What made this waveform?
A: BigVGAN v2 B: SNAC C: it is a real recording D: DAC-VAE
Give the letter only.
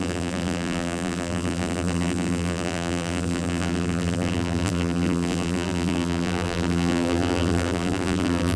A